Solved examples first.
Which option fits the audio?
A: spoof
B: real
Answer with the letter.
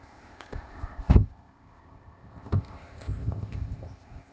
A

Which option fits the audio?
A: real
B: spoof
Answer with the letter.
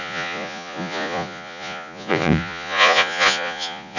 B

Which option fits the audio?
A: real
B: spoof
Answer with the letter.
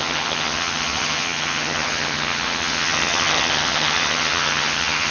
B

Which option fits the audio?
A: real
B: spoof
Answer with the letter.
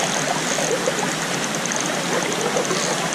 A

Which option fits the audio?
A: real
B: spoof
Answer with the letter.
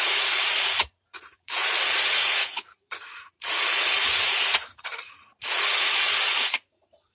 B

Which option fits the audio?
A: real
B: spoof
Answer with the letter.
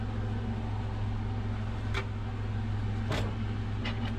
A